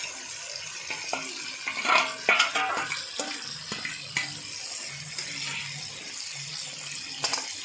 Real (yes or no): yes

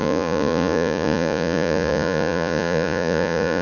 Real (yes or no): no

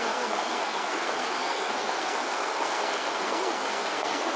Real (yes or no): no